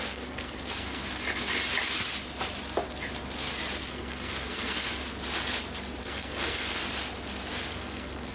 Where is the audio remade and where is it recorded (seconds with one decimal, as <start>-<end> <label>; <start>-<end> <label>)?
0.0-1.0 remade; 1.0-3.8 recorded; 3.8-5.0 remade; 5.0-6.0 recorded; 6.0-6.8 remade; 6.8-7.7 recorded; 7.7-8.3 remade